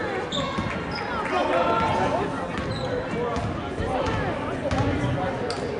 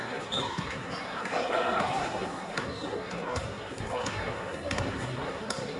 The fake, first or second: second